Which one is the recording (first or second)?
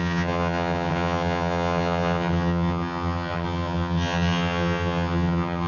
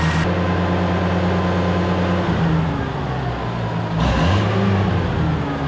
second